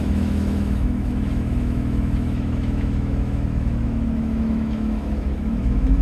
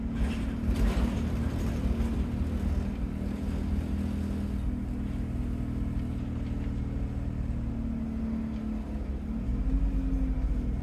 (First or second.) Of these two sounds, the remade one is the first